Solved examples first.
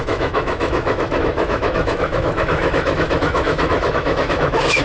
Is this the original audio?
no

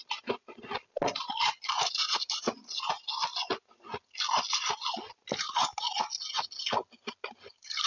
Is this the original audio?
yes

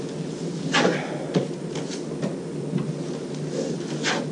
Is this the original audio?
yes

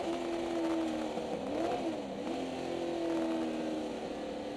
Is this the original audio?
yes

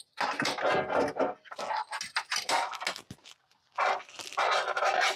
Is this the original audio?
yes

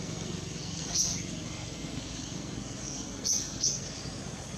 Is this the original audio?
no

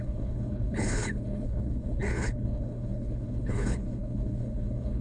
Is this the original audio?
no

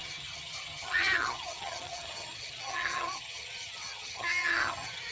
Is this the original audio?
no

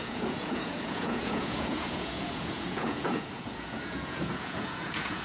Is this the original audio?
no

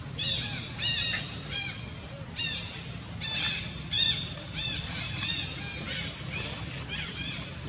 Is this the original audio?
yes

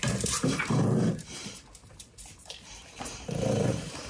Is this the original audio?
no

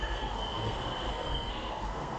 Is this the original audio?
no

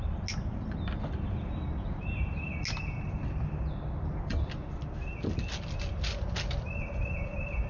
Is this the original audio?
yes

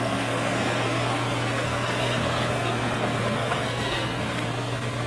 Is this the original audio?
no